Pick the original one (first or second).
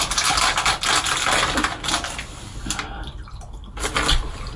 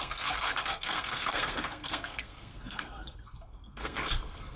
first